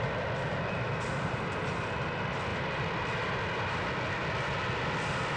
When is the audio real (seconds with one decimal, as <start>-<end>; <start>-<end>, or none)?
0.0-5.4